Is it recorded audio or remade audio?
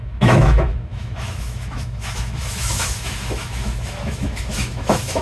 remade